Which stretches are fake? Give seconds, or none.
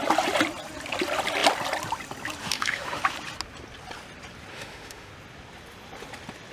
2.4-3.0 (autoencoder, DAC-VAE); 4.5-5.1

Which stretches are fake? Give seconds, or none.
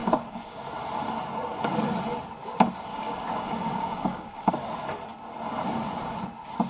0.0-0.6 (codec, DAC); 2.9-4.5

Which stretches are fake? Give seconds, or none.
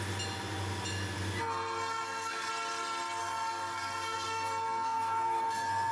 1.4-2.5 (codec, SNAC); 3.2-5.9